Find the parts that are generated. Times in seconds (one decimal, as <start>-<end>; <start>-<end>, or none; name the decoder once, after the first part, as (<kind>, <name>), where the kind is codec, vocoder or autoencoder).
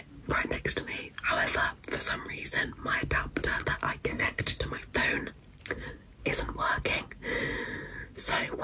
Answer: 4.1-4.6 (codec, SNAC)